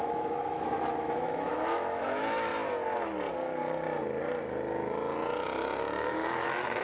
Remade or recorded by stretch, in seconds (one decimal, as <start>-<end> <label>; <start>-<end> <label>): 0.0-2.5 remade; 2.5-6.0 recorded; 6.0-6.8 remade

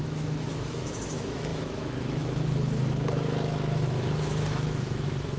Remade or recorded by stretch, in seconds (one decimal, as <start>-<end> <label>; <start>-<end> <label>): 0.0-5.4 remade

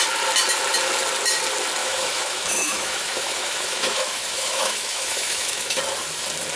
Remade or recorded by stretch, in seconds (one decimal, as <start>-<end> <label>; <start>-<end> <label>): 0.0-1.8 recorded; 1.8-5.8 remade; 5.8-6.6 recorded

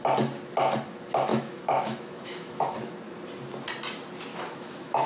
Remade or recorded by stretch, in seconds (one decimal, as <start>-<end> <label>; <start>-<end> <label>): 0.0-1.3 recorded; 1.3-2.6 remade; 2.6-4.3 recorded; 4.3-5.1 remade

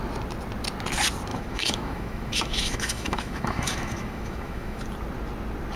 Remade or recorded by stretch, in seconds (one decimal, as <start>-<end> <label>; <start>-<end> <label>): 0.0-1.3 recorded; 1.3-4.8 remade; 4.8-5.8 recorded